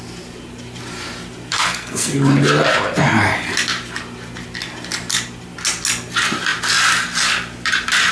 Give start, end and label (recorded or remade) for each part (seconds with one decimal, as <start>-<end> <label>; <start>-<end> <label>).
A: 0.0-1.5 recorded; 1.5-2.1 remade; 2.1-8.1 recorded